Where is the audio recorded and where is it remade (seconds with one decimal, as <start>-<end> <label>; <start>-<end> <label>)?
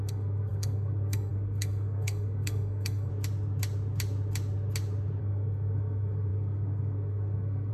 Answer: 0.0-3.1 remade; 3.1-5.2 recorded; 5.2-7.7 remade